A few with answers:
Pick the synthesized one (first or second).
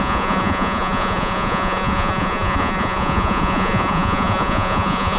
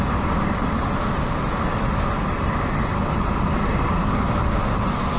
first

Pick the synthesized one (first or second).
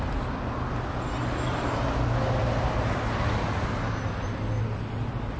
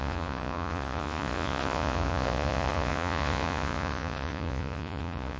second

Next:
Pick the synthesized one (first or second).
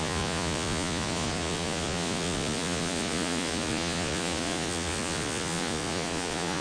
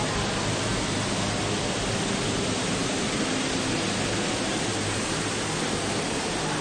first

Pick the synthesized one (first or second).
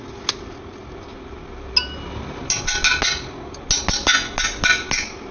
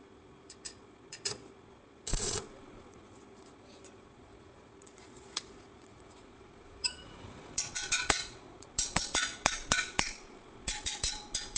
second